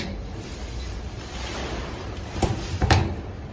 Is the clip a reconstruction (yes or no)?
yes